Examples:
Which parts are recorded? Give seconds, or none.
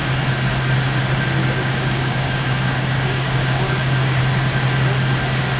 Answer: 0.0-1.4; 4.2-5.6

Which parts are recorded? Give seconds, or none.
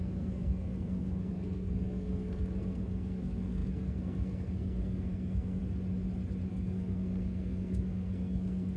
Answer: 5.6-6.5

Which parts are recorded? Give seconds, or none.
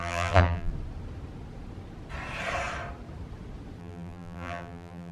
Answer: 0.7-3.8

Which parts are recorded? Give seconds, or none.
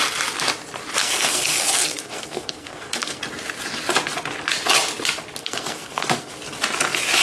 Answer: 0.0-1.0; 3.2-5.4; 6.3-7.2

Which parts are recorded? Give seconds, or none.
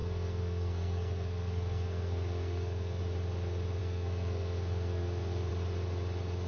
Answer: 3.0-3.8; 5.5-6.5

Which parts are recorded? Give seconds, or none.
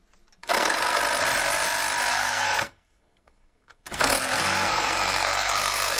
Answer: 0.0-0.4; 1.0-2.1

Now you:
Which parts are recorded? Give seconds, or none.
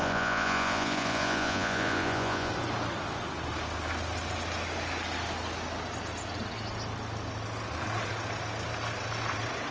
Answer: 2.5-9.7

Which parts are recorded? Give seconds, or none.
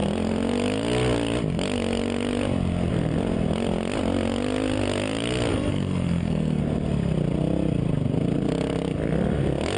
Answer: 0.0-5.5; 6.6-9.8